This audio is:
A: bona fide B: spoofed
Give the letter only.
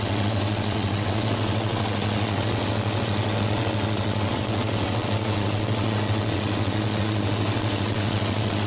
B